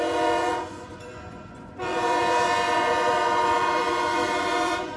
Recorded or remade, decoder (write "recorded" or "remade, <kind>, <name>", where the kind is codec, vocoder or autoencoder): remade, vocoder, Vocos